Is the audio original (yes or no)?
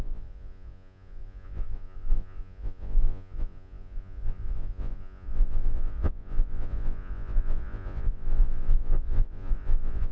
no